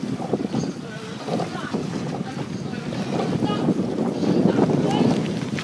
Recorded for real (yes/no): yes